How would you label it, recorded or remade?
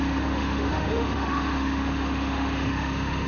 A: remade